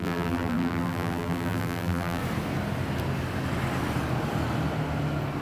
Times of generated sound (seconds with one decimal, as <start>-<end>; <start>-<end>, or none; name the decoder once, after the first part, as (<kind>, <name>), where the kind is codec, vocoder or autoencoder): 0.0-2.2 (vocoder, BigVGAN v2)